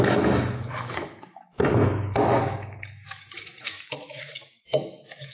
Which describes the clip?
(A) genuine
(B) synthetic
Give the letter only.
B